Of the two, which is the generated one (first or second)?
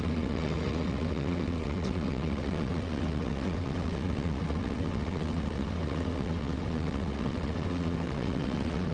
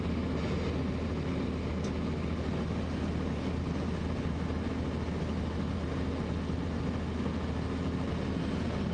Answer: first